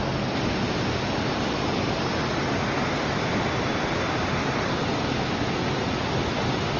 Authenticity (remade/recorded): recorded